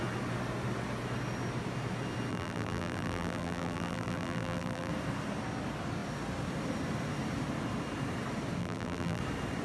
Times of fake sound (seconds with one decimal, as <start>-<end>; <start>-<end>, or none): 2.3-4.9; 8.6-9.2